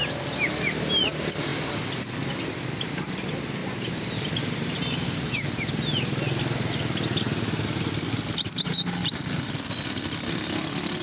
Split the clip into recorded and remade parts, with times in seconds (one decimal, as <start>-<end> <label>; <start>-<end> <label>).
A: 0.0-3.6 recorded; 3.6-4.3 remade; 4.3-9.0 recorded; 9.0-9.6 remade; 9.6-11.0 recorded